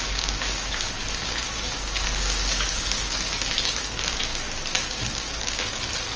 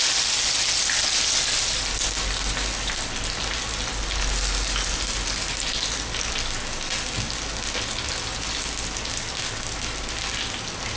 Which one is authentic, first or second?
second